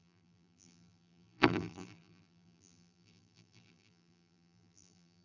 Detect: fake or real fake